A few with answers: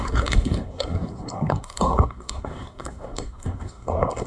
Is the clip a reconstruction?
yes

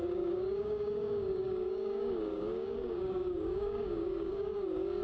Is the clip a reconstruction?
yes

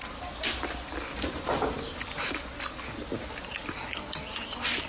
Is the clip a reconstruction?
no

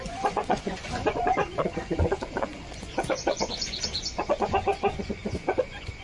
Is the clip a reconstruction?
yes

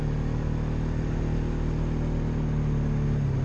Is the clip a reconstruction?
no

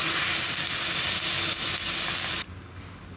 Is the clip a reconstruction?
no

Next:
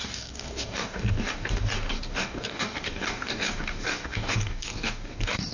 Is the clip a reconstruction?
yes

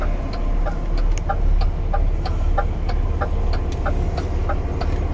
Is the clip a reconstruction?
no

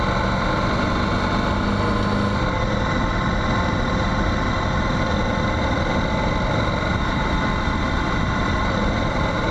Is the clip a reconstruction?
no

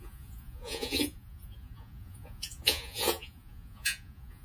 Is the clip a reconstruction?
yes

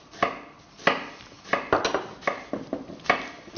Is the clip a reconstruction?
no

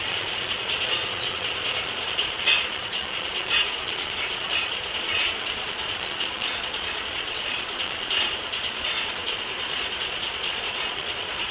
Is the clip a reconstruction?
yes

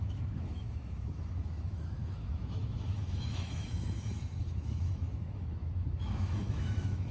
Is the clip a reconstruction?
yes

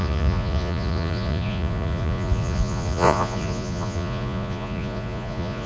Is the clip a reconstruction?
yes